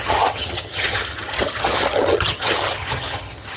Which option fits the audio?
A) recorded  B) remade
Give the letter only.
B